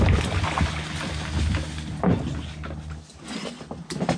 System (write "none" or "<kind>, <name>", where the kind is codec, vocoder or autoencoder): none